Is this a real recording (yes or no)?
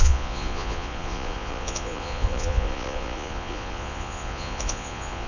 no